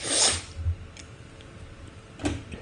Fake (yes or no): no